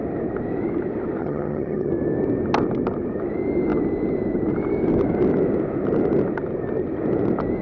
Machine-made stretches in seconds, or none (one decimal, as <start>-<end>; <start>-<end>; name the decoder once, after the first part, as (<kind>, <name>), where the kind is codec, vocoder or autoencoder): 1.2-1.9 (vocoder, HiFi-GAN)